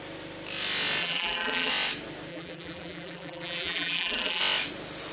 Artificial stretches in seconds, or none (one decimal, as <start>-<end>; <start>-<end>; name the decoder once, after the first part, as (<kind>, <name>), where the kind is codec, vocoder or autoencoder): 1.0-1.7 (vocoder, BigVGAN v2); 2.3-4.4